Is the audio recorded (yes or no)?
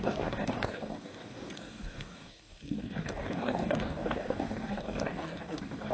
no